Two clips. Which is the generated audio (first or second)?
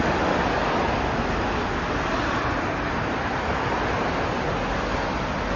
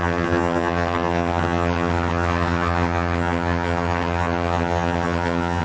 second